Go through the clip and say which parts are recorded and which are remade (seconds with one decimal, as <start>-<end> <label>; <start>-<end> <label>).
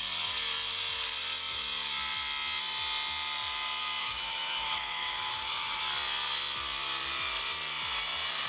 0.0-4.0 recorded; 4.0-5.8 remade; 5.8-8.5 recorded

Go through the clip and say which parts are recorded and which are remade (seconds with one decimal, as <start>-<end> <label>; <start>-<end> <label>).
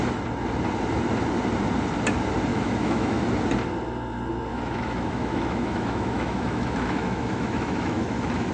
0.0-2.5 recorded; 2.5-3.2 remade; 3.2-4.5 recorded; 4.5-8.5 remade